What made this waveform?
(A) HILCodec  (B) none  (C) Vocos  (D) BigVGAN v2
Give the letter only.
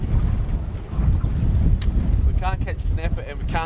B